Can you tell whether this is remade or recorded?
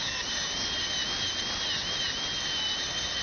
recorded